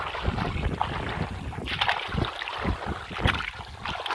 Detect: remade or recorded recorded